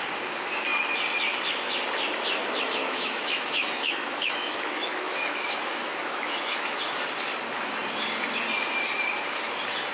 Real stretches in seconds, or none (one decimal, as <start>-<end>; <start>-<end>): 0.0-2.8; 6.8-9.9